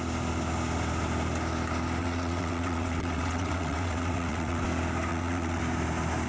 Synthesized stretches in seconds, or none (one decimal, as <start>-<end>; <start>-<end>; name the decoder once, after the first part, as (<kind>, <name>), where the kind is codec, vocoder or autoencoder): 2.0-4.6 (vocoder, WaveNeXt); 5.1-5.6